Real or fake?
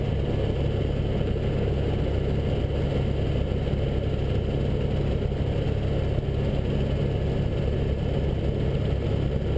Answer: real